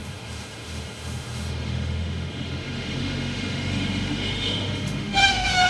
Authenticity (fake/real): fake